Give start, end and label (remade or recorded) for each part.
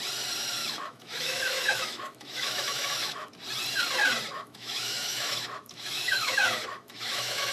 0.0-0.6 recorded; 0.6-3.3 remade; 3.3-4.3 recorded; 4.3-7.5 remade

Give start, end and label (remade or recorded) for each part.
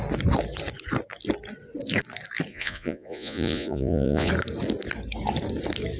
0.0-2.5 recorded; 2.5-4.3 remade; 4.3-6.0 recorded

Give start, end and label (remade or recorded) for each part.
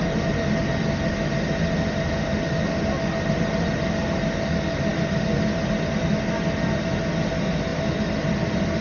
0.0-8.8 recorded